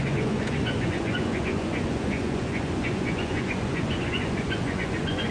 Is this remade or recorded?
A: remade